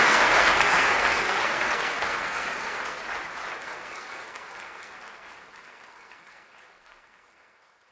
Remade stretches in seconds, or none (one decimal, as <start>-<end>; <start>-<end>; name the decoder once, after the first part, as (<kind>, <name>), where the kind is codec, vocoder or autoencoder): 0.0-3.0 (codec, SNAC); 3.6-7.9